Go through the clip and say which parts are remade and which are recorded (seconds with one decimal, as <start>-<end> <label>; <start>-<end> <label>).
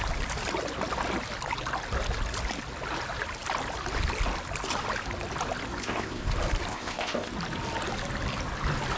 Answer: 0.0-5.8 recorded; 5.8-6.3 remade; 6.3-6.7 recorded; 6.7-7.3 remade; 7.3-9.0 recorded